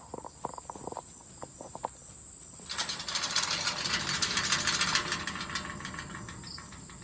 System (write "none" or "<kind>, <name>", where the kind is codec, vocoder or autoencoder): none